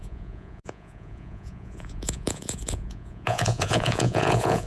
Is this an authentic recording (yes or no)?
no